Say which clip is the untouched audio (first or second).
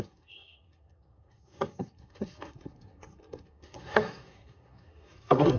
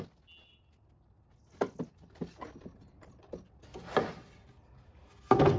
second